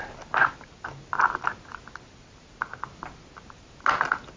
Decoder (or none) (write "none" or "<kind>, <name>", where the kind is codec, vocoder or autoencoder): none